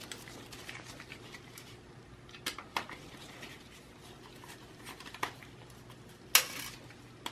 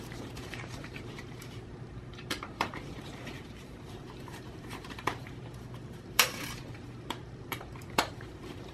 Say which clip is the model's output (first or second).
second